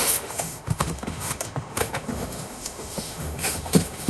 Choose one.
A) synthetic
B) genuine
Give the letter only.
A